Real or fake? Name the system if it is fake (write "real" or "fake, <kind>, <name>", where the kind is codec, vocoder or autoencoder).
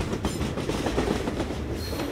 real